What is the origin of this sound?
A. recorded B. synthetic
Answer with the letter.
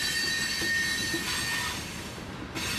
A